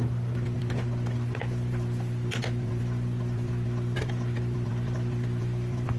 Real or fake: real